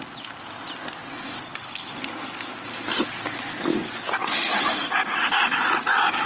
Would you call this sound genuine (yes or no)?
yes